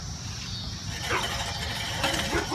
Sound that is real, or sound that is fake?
real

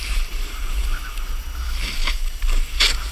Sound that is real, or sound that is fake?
real